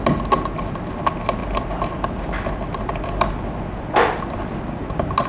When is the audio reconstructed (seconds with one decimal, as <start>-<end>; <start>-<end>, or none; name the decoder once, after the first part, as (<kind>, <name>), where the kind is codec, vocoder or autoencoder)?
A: none